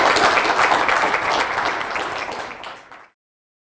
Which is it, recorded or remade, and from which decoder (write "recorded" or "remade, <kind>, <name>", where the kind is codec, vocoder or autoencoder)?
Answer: recorded